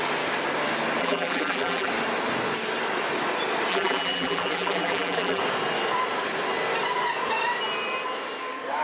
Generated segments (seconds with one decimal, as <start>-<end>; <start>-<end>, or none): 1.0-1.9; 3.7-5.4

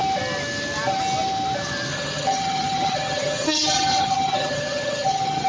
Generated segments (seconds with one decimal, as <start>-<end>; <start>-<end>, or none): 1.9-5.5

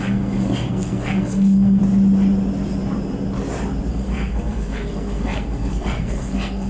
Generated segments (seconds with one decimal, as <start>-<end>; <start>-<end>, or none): 0.0-1.8; 3.9-6.7

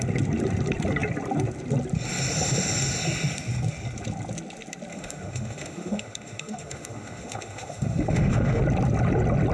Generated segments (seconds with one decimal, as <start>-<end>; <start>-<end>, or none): 4.9-8.6